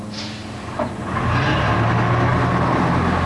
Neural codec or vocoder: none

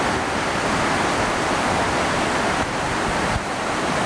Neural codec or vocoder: none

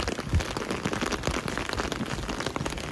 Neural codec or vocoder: none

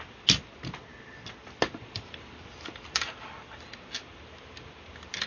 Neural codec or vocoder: none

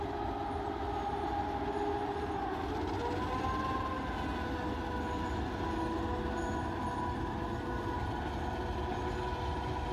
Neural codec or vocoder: none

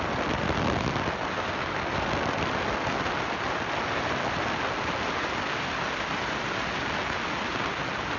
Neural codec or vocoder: none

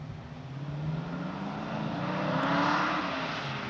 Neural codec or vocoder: none